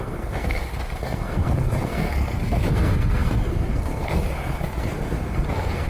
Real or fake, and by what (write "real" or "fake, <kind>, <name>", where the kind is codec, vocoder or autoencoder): fake, codec, SNAC